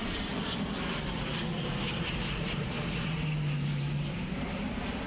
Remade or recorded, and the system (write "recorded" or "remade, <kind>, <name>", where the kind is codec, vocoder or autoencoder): recorded